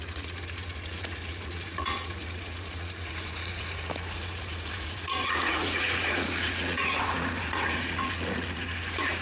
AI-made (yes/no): yes